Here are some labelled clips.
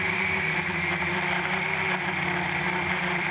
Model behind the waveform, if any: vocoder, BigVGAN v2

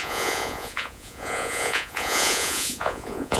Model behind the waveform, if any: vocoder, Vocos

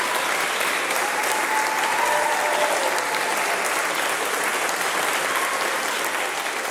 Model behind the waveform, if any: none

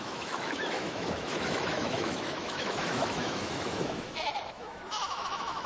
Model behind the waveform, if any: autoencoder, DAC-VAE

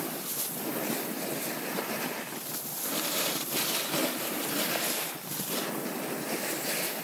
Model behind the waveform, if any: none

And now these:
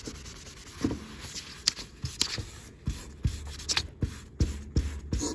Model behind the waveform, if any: none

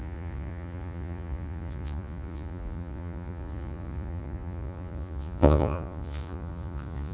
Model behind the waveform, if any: vocoder, Vocos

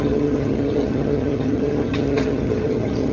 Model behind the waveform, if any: vocoder, HiFi-GAN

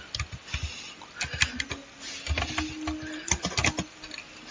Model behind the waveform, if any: none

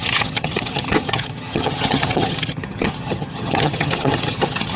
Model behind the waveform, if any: vocoder, HiFi-GAN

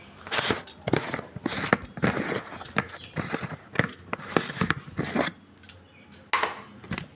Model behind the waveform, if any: none